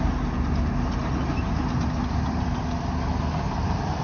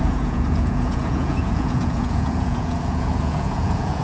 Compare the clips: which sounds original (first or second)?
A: first